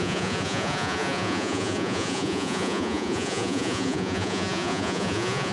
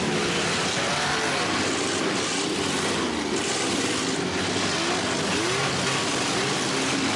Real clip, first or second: second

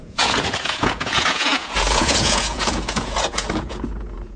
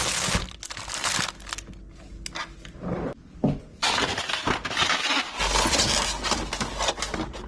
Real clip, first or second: second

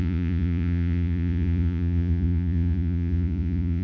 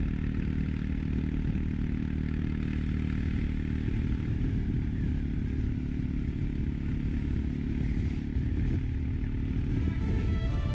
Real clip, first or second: second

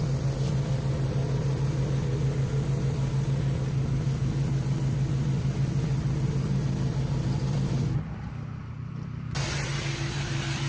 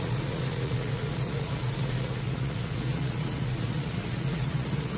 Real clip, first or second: first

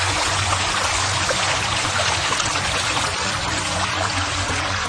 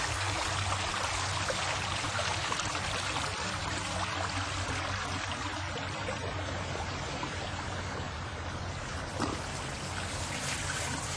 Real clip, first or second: second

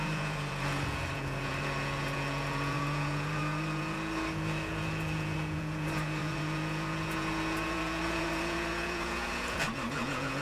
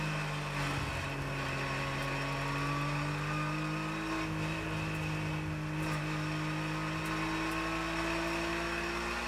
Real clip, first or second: second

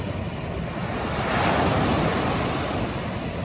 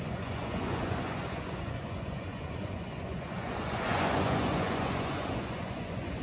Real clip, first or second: first